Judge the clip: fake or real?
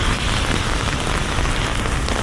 real